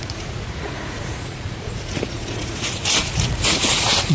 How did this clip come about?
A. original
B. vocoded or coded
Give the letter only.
B